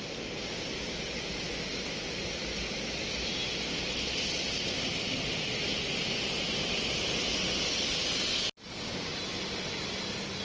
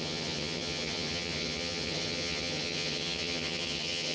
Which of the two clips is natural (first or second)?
first